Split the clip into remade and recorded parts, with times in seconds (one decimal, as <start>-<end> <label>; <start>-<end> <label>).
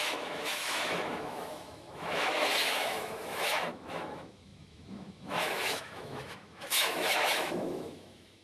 0.0-8.4 remade